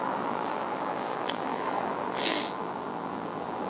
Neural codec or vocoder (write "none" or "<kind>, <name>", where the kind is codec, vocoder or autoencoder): vocoder, BigVGAN v2